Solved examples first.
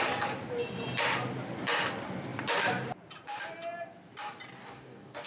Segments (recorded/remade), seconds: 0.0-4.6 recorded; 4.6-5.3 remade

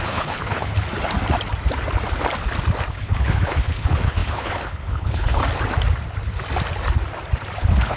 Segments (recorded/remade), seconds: 0.0-0.7 remade; 0.7-2.9 recorded; 2.9-5.4 remade; 5.4-7.6 recorded; 7.6-8.0 remade

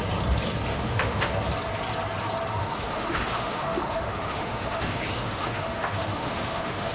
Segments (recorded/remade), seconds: 0.0-0.7 recorded; 0.7-1.3 remade; 1.3-2.6 recorded; 2.6-6.9 remade

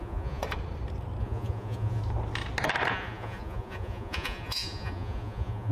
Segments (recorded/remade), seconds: 0.0-0.4 remade; 0.4-1.2 recorded; 1.2-2.0 remade; 2.0-2.9 recorded; 2.9-5.7 remade